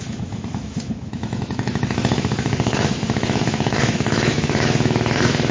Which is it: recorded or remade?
remade